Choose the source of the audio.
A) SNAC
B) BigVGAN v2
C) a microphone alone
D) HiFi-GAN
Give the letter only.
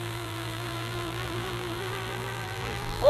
B